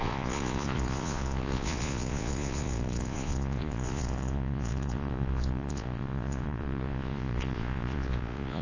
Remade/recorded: remade